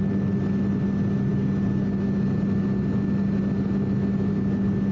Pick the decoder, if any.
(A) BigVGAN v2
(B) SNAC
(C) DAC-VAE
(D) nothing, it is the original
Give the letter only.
D